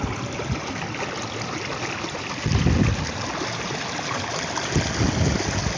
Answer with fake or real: real